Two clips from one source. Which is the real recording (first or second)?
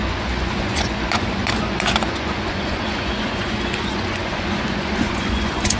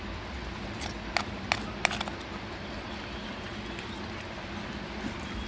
second